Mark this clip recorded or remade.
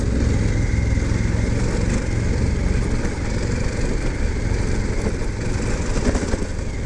recorded